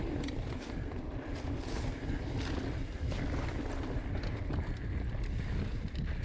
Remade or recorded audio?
recorded